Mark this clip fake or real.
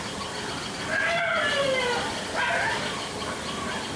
real